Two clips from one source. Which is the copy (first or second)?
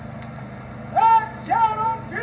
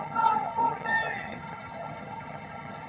second